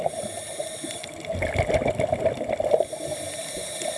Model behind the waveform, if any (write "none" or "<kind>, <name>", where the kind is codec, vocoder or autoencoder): none